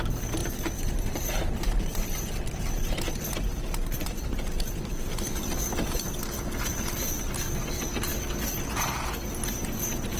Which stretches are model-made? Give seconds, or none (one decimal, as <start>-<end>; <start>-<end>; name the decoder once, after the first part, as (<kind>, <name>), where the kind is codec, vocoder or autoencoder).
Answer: 0.4-2.7 (vocoder, BigVGAN v2); 3.5-5.1